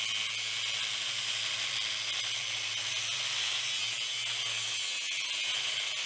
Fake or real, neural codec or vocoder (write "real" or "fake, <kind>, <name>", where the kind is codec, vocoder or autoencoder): real